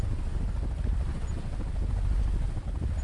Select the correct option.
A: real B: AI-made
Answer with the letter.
A